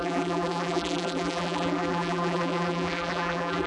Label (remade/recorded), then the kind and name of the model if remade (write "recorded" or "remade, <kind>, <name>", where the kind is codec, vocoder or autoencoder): remade, vocoder, BigVGAN v2